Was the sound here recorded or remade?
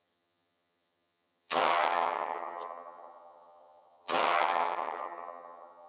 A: remade